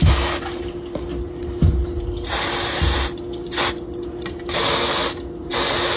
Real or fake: real